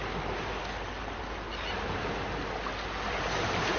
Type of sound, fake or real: real